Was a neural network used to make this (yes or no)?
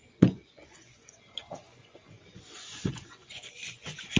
yes